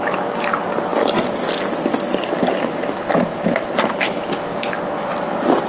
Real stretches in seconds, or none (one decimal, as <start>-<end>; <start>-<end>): 0.0-3.3; 4.3-5.7

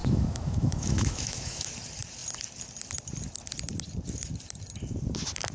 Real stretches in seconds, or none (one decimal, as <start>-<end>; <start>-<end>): 1.7-5.5

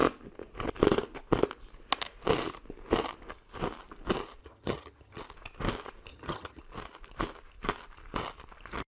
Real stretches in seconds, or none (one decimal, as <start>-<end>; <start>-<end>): 0.0-4.4; 5.2-6.1; 6.6-8.9

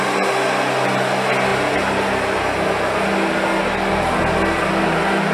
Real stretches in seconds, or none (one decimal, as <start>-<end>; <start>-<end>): 0.0-5.3

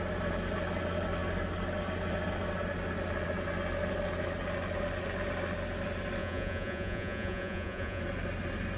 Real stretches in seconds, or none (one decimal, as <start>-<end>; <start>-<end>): 0.0-6.2; 8.0-8.8

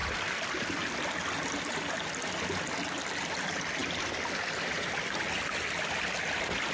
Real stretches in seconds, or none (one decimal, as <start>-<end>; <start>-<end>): 3.8-5.5

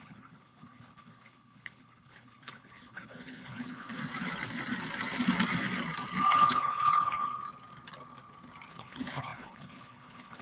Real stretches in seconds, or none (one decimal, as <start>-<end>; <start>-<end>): 4.0-6.3; 7.3-8.7

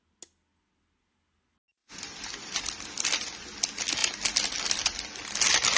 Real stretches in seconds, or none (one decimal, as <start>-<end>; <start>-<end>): 0.0-1.8; 2.6-5.8